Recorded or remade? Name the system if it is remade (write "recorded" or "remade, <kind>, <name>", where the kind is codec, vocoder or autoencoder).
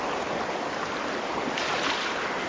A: recorded